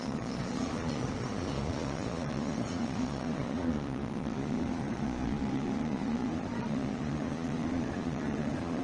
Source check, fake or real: fake